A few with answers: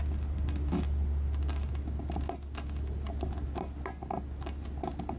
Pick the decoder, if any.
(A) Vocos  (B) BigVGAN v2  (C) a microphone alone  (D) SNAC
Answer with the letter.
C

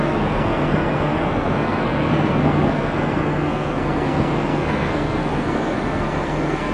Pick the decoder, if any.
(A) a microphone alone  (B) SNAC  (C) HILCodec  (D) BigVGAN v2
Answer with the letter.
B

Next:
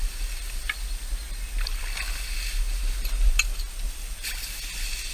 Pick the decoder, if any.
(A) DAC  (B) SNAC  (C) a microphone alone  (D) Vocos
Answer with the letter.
C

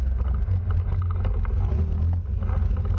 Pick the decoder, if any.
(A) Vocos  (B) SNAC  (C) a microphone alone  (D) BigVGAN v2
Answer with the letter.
C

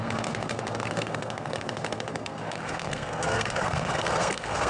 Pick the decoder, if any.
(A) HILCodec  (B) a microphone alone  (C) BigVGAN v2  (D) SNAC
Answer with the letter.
D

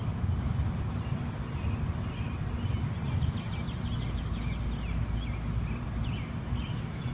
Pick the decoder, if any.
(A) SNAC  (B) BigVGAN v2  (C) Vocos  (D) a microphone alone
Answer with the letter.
D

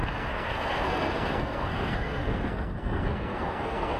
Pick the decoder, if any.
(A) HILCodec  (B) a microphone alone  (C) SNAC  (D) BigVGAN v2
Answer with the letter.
C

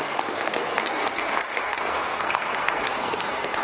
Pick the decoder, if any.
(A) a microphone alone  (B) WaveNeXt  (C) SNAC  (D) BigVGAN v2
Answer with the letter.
C